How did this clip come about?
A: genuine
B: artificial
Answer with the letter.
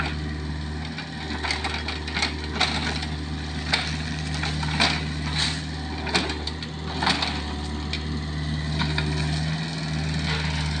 A